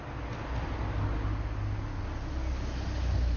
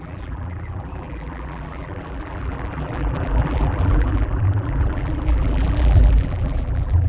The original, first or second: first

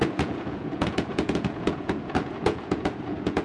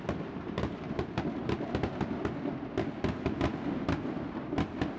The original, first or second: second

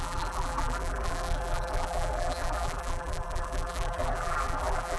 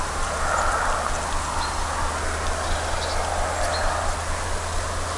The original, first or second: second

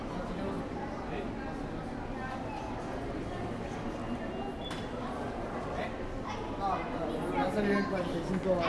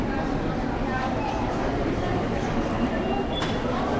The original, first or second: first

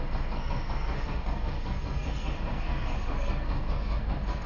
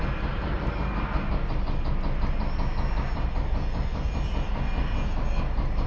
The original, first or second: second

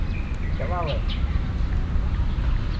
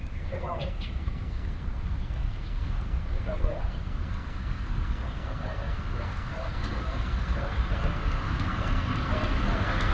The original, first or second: first